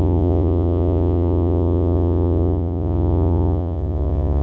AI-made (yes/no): yes